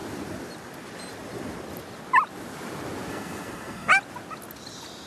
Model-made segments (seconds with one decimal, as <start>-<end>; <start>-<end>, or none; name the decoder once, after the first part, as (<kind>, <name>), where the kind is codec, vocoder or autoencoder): 3.1-3.9 (codec, SNAC)